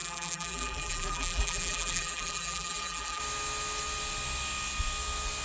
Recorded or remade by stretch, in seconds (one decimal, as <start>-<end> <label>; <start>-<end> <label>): 0.0-3.2 remade; 3.2-5.4 recorded

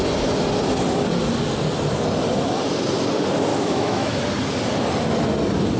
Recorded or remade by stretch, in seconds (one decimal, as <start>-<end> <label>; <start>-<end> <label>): 0.0-3.5 recorded; 3.5-4.2 remade; 4.2-5.8 recorded

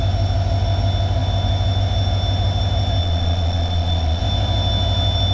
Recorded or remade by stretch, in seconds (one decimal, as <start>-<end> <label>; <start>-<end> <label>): 0.0-3.0 recorded; 3.0-4.2 remade; 4.2-5.3 recorded

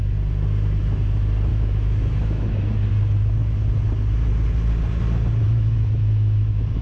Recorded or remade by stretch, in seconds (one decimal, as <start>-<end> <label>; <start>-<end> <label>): 0.0-1.5 recorded; 1.5-2.9 remade; 2.9-5.4 recorded; 5.4-6.8 remade